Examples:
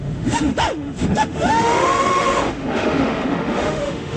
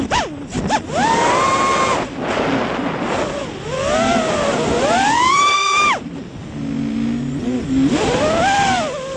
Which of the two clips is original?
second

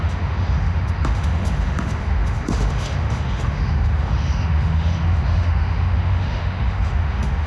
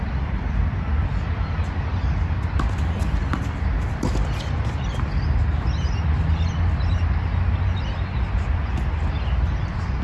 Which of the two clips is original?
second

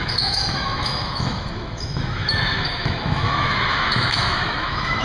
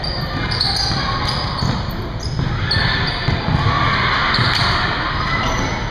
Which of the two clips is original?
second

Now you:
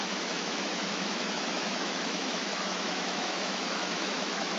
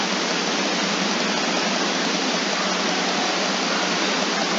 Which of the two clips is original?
second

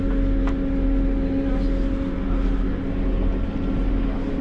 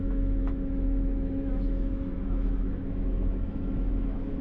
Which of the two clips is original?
first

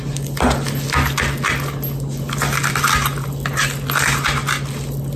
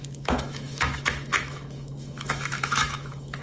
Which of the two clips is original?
first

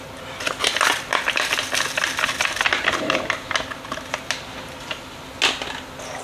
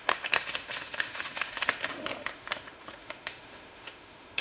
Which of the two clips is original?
first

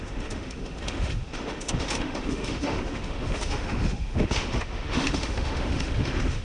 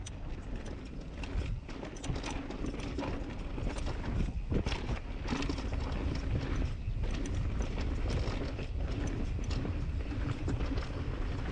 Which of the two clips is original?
second